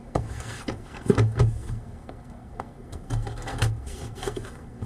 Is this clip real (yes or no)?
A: no